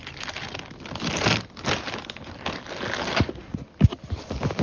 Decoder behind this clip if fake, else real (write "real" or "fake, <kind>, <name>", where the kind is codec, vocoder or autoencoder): real